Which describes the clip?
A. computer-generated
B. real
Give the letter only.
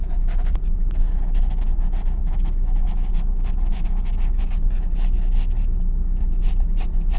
B